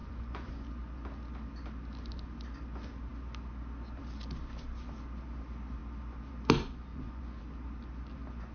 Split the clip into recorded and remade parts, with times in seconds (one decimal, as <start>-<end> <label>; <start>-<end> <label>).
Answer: 0.0-0.5 remade; 0.5-6.9 recorded; 6.9-7.4 remade; 7.4-8.5 recorded